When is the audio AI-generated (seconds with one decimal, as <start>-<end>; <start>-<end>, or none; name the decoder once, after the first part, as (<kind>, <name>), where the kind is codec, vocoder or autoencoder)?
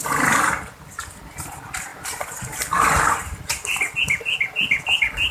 none